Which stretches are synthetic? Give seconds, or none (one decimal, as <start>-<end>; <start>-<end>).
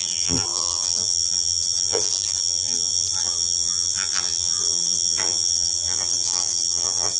0.0-7.2